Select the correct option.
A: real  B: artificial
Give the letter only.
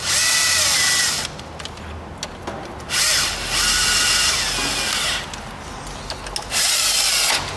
A